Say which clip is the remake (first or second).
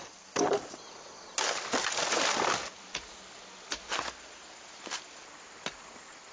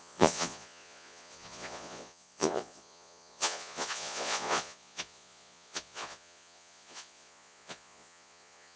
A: second